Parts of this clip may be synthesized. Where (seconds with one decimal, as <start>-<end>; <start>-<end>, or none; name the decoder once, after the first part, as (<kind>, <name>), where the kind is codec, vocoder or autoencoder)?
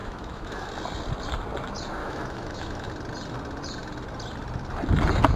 0.0-0.7 (autoencoder, DAC-VAE); 2.0-2.9